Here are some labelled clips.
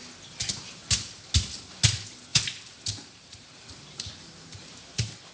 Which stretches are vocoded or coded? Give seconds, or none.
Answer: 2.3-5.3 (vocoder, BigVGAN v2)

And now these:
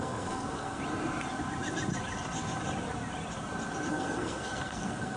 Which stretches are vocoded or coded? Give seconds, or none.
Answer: 0.0-0.8 (codec, SNAC); 3.9-5.2

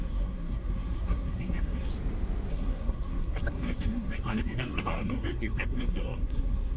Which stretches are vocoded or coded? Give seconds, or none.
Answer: 0.0-1.9 (codec, SNAC); 2.5-6.8

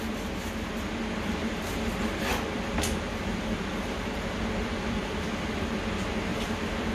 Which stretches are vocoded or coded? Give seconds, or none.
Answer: 1.4-5.5 (vocoder, BigVGAN v2); 6.3-6.9

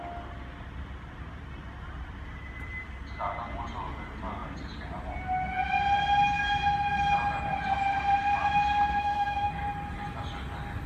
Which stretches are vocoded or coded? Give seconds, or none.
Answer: 9.0-9.5 (autoencoder, DAC-VAE)

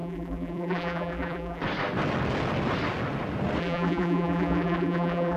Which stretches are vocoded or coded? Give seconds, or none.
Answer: 0.0-1.6 (vocoder, BigVGAN v2); 3.6-5.4

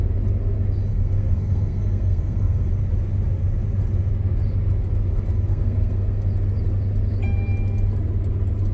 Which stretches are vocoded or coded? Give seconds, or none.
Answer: 0.9-2.7 (codec, SNAC); 5.5-6.2

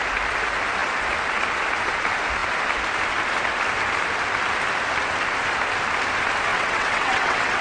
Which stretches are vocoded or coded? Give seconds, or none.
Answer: 6.5-7.6 (vocoder, WaveNeXt)